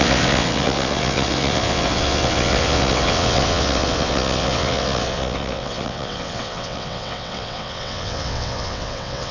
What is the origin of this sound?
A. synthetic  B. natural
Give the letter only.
A